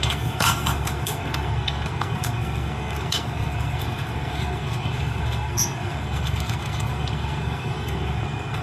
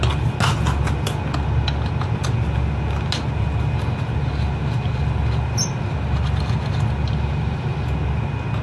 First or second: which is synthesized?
first